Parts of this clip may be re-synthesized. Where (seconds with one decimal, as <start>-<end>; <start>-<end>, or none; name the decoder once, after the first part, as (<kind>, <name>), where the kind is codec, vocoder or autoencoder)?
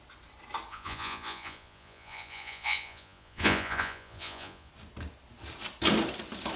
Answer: 0.7-4.7 (vocoder, Vocos)